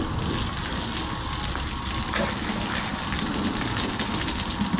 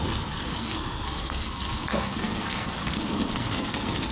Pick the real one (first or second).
first